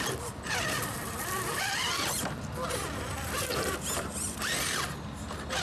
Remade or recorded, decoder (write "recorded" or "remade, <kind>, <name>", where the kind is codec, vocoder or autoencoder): recorded